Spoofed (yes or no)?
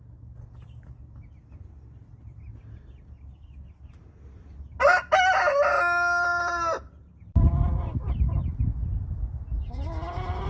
no